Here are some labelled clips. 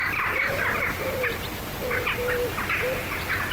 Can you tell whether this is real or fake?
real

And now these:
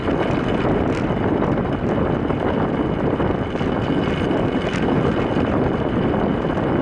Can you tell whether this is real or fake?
real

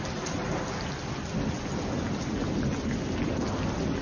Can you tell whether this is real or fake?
real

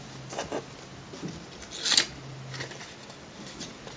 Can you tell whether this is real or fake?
real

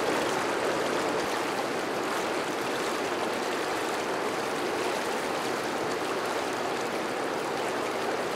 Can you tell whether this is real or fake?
real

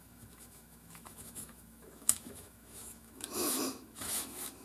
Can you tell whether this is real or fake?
fake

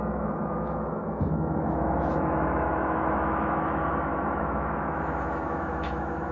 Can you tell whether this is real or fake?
fake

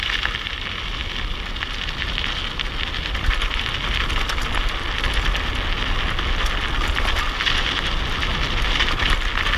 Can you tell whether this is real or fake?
real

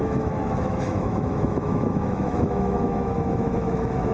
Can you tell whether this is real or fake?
fake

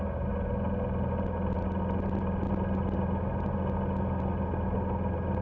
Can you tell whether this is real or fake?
real